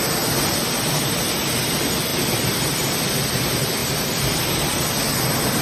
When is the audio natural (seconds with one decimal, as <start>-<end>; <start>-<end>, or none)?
0.0-2.1; 3.4-5.6